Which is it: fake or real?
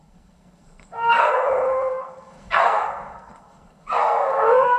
fake